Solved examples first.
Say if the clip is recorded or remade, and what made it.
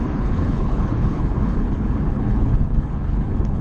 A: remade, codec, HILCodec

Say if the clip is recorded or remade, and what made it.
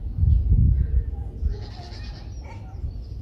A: recorded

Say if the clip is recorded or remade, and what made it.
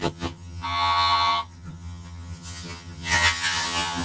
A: remade, vocoder, HiFi-GAN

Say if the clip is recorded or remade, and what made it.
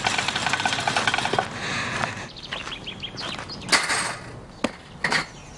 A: recorded